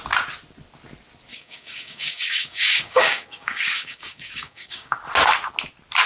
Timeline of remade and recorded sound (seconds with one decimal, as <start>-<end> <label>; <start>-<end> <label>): 0.0-1.3 recorded; 1.3-5.0 remade; 5.0-6.1 recorded